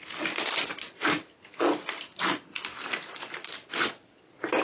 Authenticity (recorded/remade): recorded